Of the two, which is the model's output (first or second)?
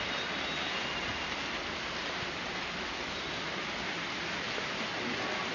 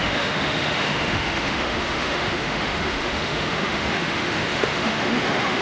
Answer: second